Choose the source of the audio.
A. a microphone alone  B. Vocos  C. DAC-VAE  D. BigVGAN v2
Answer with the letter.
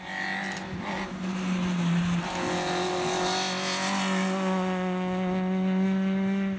A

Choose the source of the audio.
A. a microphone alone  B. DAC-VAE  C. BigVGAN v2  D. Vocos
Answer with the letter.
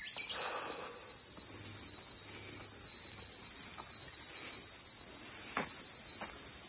A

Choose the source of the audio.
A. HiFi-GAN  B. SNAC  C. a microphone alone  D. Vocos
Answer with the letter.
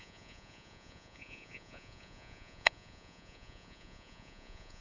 D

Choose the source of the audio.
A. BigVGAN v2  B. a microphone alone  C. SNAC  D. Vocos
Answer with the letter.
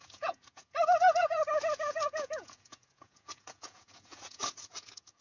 D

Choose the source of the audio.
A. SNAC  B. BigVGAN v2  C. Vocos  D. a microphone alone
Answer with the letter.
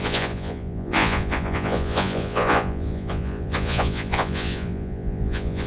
C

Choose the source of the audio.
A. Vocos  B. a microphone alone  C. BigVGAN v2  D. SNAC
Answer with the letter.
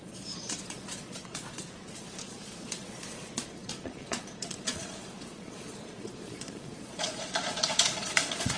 A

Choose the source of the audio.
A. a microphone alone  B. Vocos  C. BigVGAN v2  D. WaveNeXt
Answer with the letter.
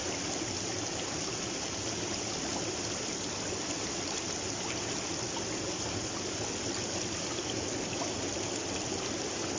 A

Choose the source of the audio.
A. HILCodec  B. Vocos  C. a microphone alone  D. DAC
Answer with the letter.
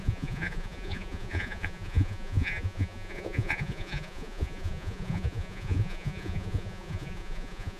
B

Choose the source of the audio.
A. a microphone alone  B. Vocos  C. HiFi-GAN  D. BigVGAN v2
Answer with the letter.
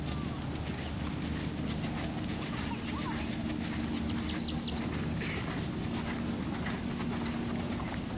A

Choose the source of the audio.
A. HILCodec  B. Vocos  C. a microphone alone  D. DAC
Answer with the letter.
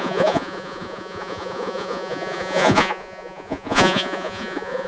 B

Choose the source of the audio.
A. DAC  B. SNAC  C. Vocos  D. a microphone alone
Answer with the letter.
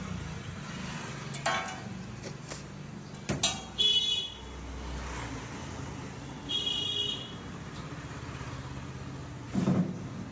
D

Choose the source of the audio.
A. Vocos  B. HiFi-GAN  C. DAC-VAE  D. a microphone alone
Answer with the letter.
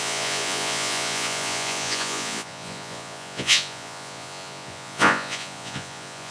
A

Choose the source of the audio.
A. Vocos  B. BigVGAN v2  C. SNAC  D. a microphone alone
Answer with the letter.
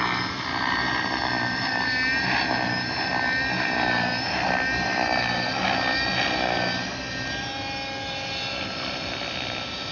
D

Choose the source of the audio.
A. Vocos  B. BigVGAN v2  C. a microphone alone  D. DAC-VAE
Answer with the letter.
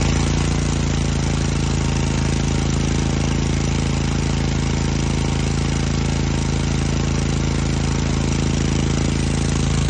C